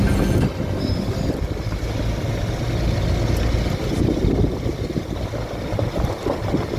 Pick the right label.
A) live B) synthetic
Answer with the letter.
A